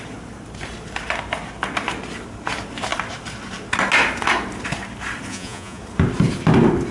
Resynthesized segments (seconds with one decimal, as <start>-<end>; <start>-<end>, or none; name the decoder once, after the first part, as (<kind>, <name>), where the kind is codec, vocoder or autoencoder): 5.3-5.8 (vocoder, Vocos)